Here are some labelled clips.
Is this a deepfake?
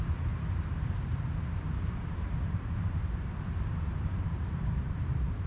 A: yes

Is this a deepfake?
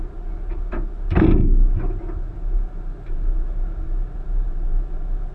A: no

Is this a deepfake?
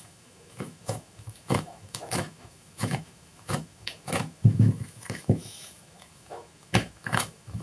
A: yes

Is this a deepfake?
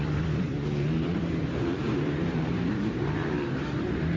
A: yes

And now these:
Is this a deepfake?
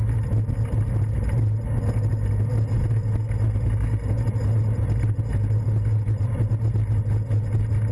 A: no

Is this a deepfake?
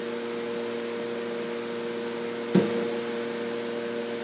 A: no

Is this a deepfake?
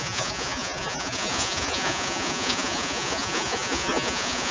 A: yes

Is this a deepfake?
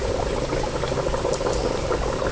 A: no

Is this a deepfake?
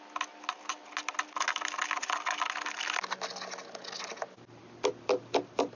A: no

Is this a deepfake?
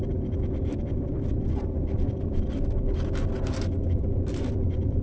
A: no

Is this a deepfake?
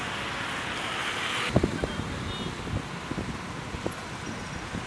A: no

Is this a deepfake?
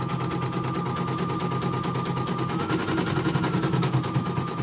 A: no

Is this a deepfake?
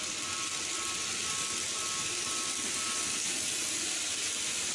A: no